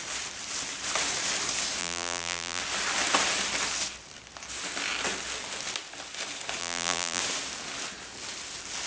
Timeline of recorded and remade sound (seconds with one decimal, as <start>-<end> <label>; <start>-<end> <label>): 0.0-1.8 recorded; 1.8-2.6 remade; 2.6-6.6 recorded; 6.6-7.2 remade; 7.2-8.9 recorded